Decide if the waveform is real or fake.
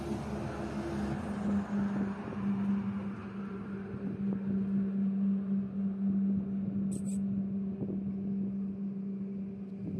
real